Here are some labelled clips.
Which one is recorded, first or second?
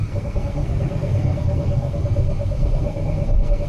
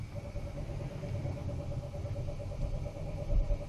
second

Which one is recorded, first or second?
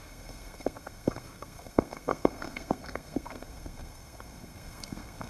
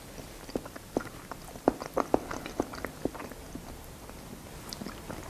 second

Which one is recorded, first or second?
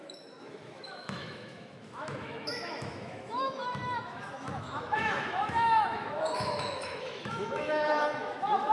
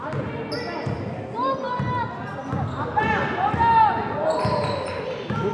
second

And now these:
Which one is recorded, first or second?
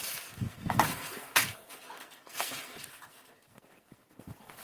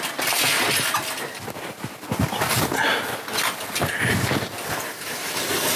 second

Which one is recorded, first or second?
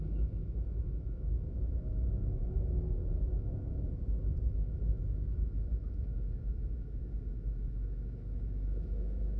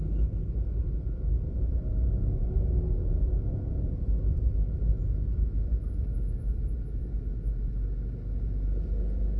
second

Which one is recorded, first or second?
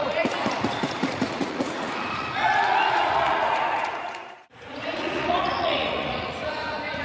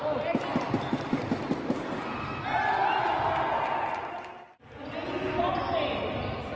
second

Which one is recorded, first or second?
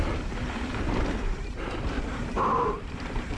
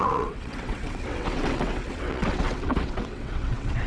first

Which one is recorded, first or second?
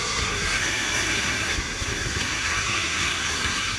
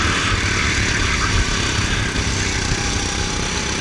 second